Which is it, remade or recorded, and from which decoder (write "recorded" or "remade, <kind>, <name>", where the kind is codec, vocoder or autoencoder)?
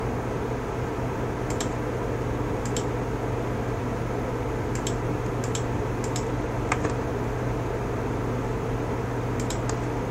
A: recorded